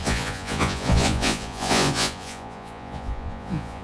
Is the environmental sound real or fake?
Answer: fake